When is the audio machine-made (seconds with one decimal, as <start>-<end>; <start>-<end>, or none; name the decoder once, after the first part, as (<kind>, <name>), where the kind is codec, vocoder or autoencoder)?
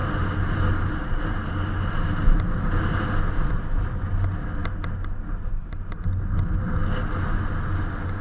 none